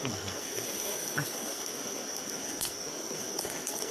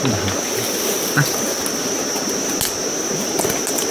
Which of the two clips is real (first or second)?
second